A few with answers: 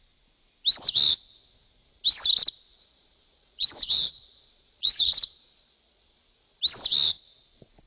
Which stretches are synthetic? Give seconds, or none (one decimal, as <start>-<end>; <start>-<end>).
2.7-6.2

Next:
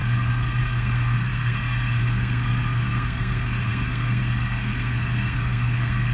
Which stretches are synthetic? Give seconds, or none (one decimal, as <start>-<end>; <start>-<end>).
0.0-6.1

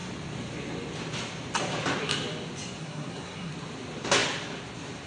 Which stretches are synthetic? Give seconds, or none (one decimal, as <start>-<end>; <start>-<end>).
2.8-3.5